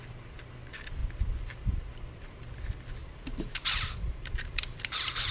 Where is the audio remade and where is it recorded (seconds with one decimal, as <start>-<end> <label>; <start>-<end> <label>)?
0.0-1.0 recorded; 1.0-2.6 remade; 2.6-3.0 recorded; 3.0-5.3 remade